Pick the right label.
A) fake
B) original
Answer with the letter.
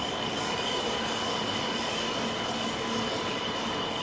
A